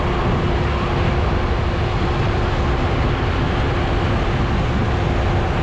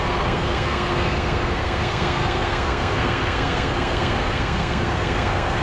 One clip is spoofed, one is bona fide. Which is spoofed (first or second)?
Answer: second